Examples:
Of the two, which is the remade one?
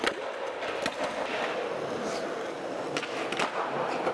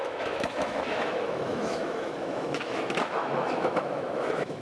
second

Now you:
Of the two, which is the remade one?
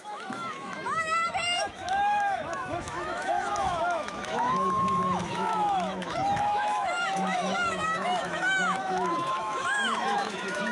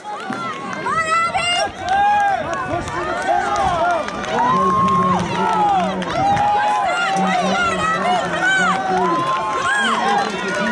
first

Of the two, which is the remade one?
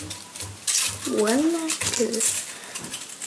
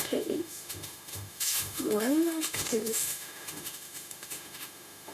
second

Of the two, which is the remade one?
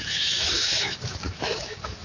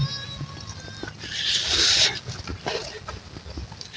first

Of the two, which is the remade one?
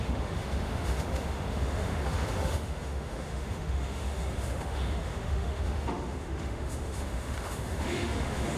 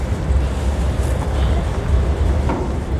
first